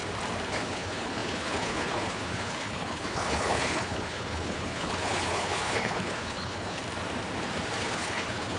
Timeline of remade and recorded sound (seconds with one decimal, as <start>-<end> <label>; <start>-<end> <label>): 0.0-0.5 recorded; 0.5-6.8 remade; 6.8-7.8 recorded; 7.8-8.6 remade